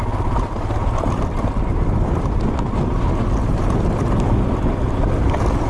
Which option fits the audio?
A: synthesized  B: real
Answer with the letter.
B